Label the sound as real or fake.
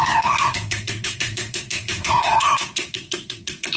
fake